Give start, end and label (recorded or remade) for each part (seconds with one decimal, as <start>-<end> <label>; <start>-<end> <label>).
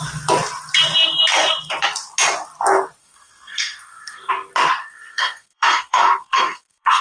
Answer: 0.0-3.0 recorded; 3.0-4.3 remade; 4.3-4.8 recorded; 4.8-7.0 remade